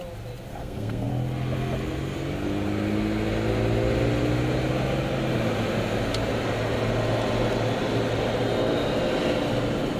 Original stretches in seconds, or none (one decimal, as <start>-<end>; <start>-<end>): 0.0-0.5; 1.1-10.0